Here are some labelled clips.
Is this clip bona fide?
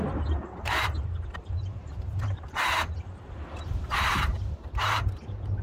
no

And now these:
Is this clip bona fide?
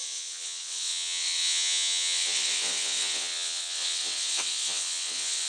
no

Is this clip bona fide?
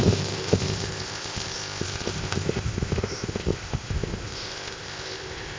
no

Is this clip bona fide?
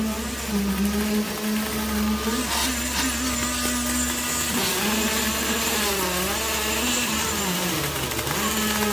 yes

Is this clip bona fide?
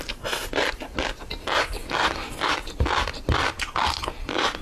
yes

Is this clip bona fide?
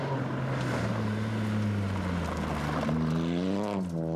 yes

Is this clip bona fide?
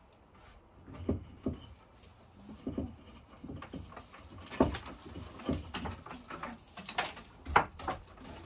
yes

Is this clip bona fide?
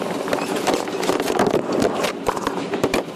no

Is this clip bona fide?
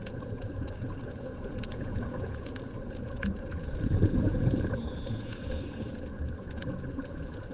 no